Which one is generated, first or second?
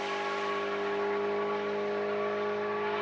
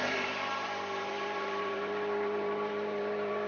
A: second